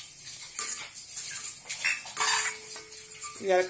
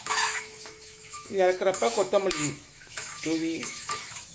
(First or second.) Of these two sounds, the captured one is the first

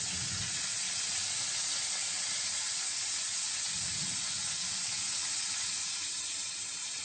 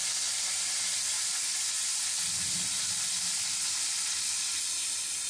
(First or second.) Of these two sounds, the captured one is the second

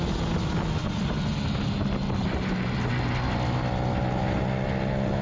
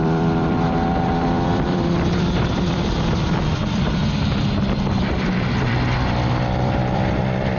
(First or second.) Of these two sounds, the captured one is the first